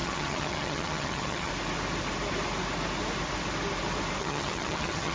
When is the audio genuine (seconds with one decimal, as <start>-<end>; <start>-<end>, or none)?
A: 1.5-4.2

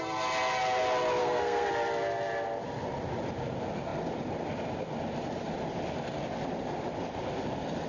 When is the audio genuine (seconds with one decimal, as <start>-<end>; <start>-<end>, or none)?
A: 0.0-1.2; 1.7-7.9